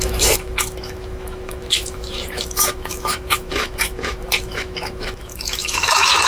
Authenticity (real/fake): fake